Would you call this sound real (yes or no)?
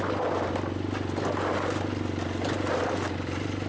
yes